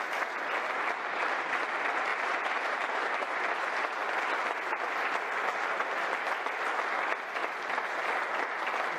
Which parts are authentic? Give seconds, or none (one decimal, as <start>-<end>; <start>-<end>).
0.0-2.1; 3.4-9.0